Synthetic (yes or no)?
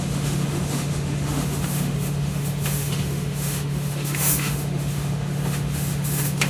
yes